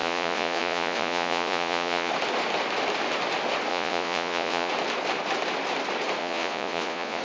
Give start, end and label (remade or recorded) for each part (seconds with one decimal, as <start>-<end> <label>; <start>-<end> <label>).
0.0-2.1 remade; 2.1-3.7 recorded; 3.7-4.7 remade; 4.7-6.2 recorded; 6.2-7.2 remade